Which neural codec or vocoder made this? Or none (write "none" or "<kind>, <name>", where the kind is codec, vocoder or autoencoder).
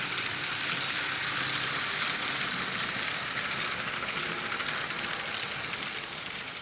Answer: none